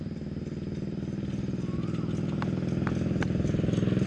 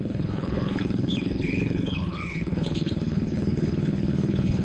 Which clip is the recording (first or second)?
first